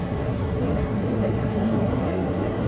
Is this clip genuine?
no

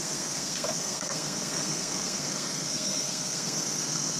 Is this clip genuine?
no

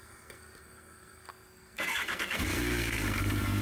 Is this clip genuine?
no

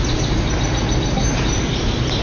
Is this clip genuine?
yes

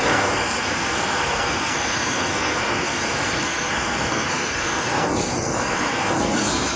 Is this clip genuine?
no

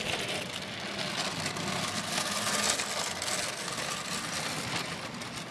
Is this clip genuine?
yes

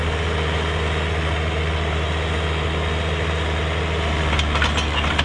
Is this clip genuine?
yes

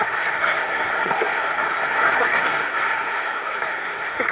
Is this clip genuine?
no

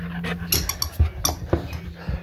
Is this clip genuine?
yes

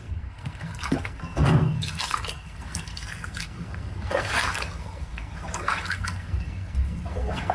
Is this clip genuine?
no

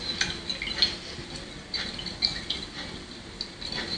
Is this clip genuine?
yes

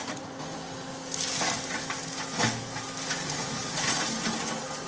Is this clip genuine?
yes